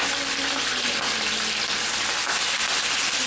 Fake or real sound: real